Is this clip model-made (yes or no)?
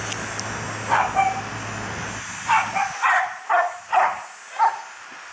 no